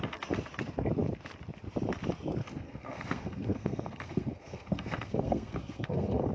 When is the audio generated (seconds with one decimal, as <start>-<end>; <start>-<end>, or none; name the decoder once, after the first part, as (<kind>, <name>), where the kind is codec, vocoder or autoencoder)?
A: 2.4-6.3 (codec, SNAC)